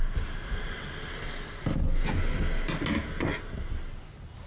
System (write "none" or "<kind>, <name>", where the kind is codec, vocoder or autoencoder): none